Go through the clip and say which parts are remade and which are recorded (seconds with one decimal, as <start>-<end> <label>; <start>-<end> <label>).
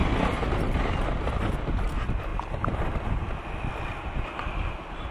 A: 0.0-5.1 recorded